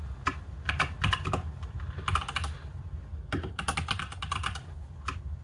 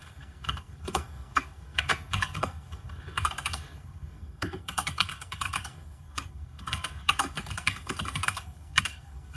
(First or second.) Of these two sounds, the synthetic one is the second